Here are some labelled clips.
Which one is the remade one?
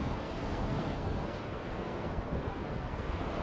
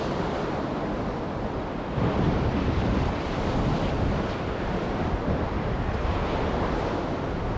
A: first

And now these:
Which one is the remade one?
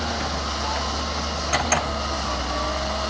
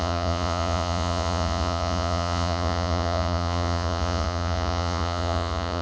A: second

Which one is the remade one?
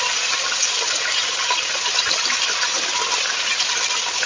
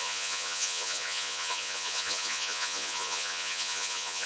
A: second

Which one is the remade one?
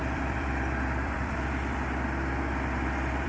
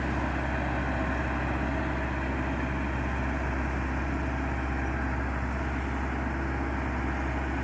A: first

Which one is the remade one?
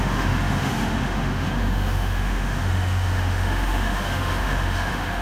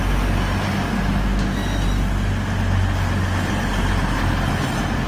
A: first